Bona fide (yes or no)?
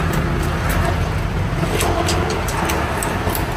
no